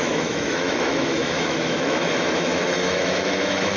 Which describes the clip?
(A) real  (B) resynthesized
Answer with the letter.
B